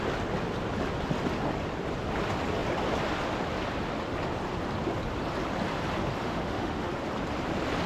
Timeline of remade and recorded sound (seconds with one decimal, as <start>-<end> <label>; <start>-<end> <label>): 0.0-6.2 recorded; 6.2-6.9 remade; 6.9-7.9 recorded